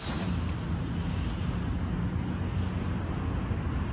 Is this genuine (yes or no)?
yes